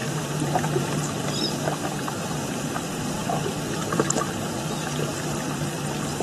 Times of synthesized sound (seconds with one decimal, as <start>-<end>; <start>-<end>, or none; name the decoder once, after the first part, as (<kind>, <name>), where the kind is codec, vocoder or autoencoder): 0.0-2.7 (vocoder, BigVGAN v2); 3.2-5.6